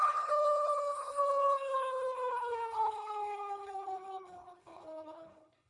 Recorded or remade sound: remade